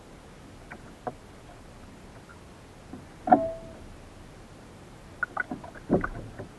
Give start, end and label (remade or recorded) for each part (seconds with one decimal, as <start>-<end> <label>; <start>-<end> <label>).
0.0-6.6 recorded

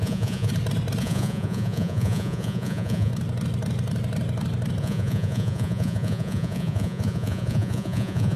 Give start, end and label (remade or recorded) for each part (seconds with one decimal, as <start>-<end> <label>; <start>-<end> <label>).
0.0-0.5 remade; 0.5-1.0 recorded; 1.0-3.1 remade; 3.1-4.8 recorded; 4.8-8.4 remade

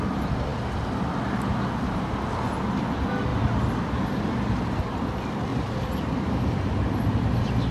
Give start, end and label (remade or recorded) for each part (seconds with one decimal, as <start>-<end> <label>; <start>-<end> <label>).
0.0-7.7 recorded

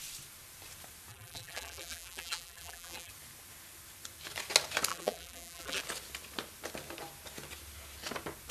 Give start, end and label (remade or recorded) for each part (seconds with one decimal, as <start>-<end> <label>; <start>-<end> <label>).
0.0-1.1 recorded; 1.1-3.1 remade; 3.1-4.9 recorded; 4.9-5.8 remade; 5.8-8.5 recorded

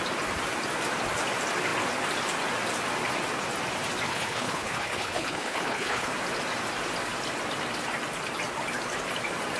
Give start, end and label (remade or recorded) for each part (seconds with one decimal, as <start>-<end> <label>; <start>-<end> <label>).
0.0-4.1 recorded; 4.1-6.1 remade; 6.1-9.6 recorded